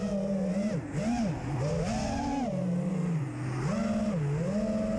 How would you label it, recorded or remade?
recorded